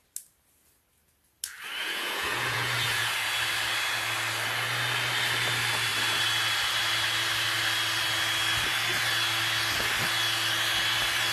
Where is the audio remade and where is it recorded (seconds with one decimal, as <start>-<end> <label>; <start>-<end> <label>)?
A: 0.0-1.8 recorded; 1.8-3.1 remade; 3.1-11.3 recorded